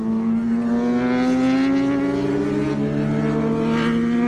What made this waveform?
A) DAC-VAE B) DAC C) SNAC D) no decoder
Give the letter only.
D